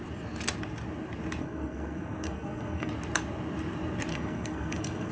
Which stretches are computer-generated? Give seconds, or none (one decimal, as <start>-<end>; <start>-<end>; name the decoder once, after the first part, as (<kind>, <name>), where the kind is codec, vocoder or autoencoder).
1.4-2.9 (codec, SNAC); 4.1-5.1